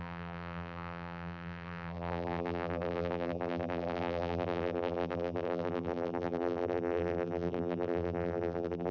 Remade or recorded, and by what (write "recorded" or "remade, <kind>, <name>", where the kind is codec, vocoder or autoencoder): remade, vocoder, BigVGAN v2